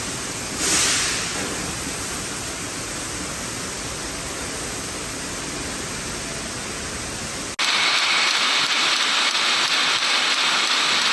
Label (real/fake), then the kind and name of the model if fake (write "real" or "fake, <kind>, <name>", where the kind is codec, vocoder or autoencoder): real